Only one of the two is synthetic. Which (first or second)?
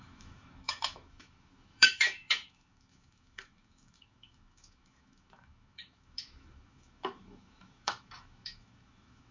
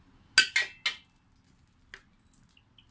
first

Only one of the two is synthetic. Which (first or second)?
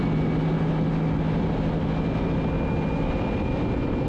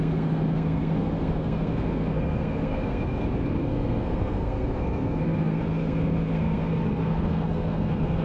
second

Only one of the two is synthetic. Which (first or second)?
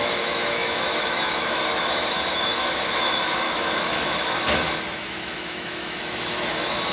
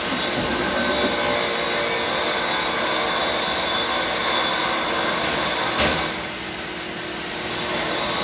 first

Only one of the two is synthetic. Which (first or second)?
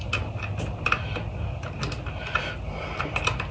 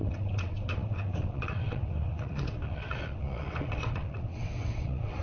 second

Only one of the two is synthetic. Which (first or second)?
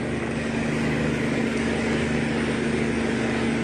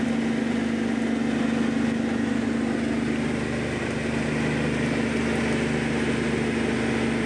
first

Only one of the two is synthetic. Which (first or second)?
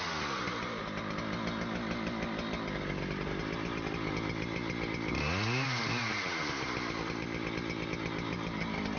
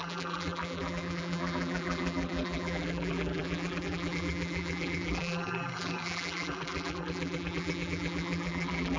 second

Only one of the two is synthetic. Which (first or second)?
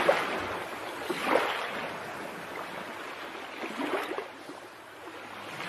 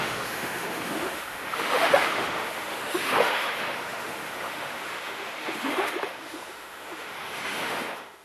second